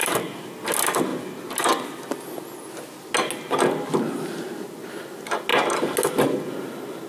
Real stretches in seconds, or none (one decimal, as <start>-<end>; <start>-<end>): 0.0-7.1